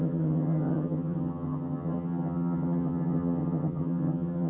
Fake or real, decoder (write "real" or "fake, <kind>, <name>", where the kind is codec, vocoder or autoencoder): fake, vocoder, HiFi-GAN